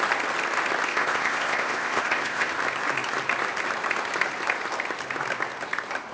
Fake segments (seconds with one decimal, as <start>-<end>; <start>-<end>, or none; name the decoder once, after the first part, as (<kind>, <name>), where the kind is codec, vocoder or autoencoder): 0.9-2.5 (codec, ZipCodec)